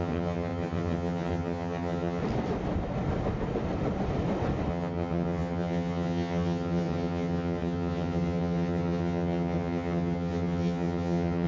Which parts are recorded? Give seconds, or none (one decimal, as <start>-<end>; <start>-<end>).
2.2-4.7